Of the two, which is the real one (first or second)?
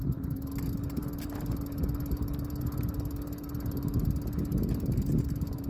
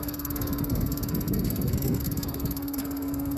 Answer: first